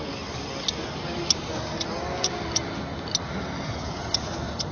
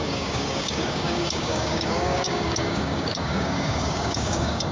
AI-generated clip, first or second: second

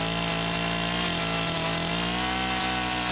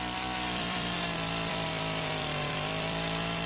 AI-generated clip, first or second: second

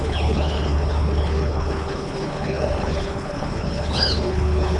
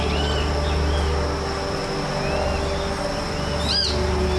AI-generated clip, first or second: first